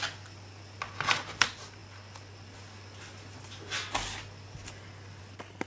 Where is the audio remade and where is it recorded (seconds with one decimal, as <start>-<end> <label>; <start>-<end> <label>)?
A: 0.0-5.7 recorded